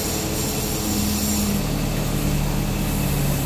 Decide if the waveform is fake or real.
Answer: real